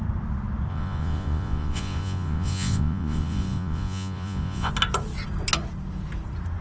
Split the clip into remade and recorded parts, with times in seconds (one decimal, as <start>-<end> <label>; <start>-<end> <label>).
0.0-0.7 recorded; 0.7-4.7 remade; 4.7-6.6 recorded